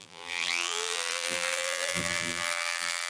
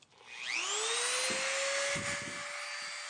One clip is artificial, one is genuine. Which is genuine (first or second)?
second